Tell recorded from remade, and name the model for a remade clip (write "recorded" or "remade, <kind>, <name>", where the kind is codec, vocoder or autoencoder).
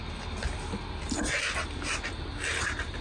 recorded